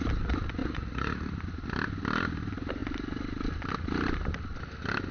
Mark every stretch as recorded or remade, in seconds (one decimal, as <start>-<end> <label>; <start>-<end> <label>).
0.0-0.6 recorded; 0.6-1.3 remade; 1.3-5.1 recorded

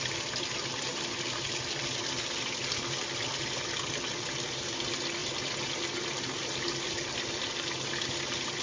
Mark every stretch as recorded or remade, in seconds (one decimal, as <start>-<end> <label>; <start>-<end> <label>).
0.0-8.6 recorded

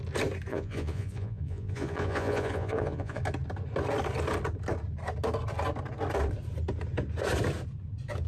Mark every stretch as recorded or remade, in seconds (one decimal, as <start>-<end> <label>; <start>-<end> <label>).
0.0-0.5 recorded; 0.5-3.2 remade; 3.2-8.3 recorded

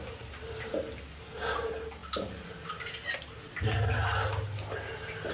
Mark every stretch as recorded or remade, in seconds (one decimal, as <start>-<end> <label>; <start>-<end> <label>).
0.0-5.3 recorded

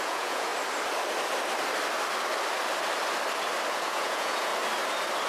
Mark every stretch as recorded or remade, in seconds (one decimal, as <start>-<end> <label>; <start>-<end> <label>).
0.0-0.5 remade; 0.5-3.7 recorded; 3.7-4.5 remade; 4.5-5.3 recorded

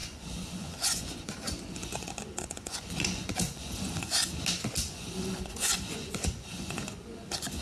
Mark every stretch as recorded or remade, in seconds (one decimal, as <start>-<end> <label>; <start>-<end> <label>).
0.0-4.2 remade; 4.2-4.9 recorded; 4.9-7.6 remade

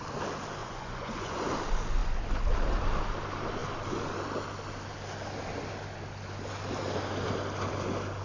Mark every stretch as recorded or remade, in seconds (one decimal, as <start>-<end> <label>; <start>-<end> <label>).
0.0-0.6 recorded; 0.6-1.5 remade; 1.5-8.2 recorded

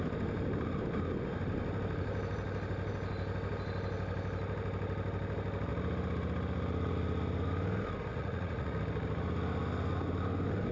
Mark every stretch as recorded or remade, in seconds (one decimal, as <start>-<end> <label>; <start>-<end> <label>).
0.0-8.1 recorded; 8.1-8.8 remade; 8.8-10.7 recorded